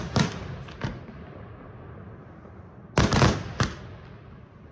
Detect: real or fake real